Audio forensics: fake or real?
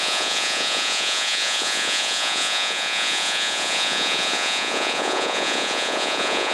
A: fake